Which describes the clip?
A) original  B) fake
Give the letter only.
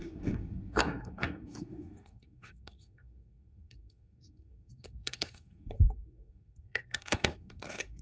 B